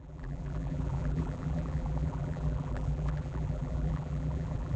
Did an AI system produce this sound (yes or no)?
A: yes